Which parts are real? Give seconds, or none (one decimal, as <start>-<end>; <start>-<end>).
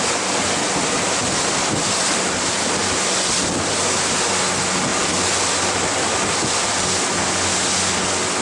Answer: 0.0-1.2; 2.2-2.8; 3.7-4.9; 7.0-8.4